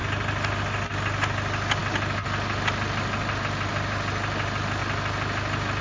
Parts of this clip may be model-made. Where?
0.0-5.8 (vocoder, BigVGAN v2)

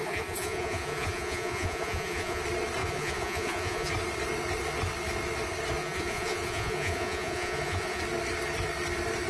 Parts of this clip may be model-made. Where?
0.0-2.4 (vocoder, Vocos); 2.8-3.9; 5.8-8.0

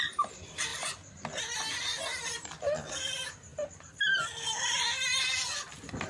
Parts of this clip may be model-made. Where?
0.0-0.7 (vocoder, BigVGAN v2); 1.4-3.5; 5.1-6.1

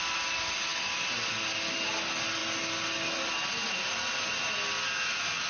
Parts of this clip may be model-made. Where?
none

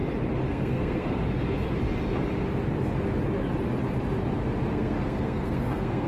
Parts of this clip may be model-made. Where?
0.5-1.2 (codec, SNAC); 4.7-6.1

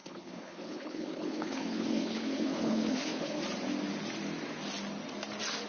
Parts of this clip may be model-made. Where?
0.0-3.4 (codec, HILCodec)

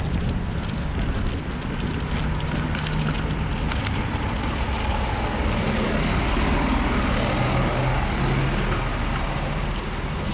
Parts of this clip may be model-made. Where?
4.8-8.2 (codec, DAC)